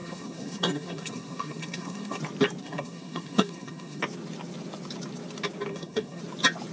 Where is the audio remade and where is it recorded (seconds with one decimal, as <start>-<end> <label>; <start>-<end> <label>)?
0.0-2.2 remade; 2.2-2.6 recorded; 2.6-4.0 remade; 4.0-5.7 recorded; 5.7-6.2 remade; 6.2-6.7 recorded